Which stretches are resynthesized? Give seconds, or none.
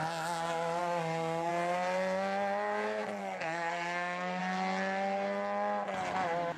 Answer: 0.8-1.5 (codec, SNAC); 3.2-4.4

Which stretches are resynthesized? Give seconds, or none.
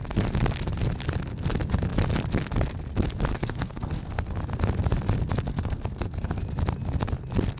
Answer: 3.3-4.3 (codec, SNAC); 5.5-6.4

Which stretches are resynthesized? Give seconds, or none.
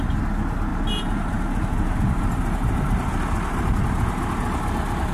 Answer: 0.7-3.8 (vocoder, BigVGAN v2)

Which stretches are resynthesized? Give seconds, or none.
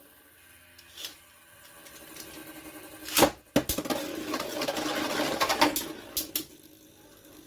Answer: none